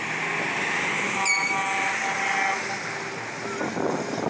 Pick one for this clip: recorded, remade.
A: recorded